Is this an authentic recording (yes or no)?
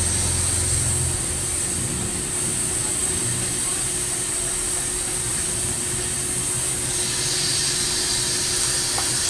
yes